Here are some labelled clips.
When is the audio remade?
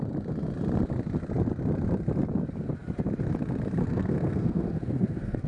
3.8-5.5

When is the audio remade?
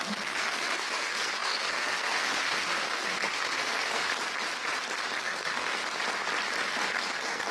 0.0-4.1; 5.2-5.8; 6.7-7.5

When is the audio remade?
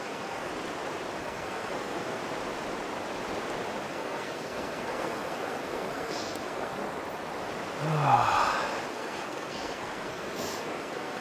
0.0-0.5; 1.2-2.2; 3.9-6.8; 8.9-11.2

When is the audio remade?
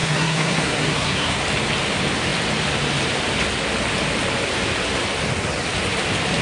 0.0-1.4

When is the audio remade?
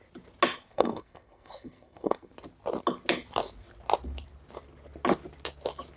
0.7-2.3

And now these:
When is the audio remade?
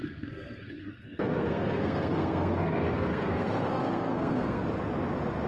0.0-4.6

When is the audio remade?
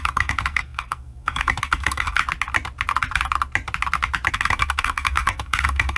0.0-2.2; 4.3-6.0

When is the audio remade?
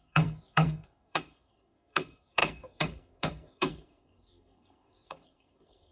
0.0-5.9